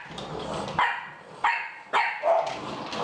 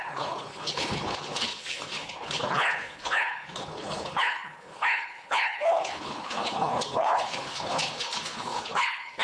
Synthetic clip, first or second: second